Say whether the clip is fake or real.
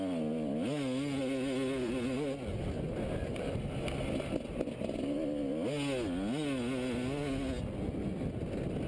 real